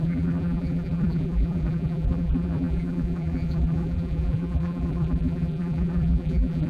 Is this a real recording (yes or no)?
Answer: no